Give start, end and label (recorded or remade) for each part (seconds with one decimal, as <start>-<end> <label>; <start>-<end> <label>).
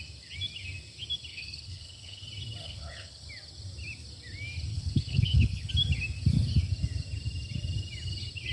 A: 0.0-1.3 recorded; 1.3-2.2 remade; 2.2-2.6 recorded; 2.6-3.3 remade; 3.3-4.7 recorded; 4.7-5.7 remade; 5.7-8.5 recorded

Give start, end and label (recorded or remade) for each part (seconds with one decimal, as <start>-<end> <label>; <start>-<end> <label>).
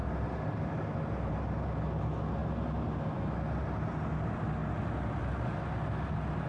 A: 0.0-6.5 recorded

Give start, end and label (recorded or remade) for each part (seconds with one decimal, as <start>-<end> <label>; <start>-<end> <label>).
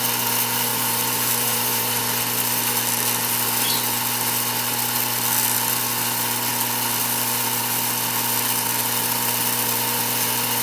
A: 0.0-0.7 recorded; 0.7-2.0 remade; 2.0-10.6 recorded